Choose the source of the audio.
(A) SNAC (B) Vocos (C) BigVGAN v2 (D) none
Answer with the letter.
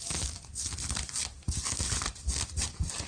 D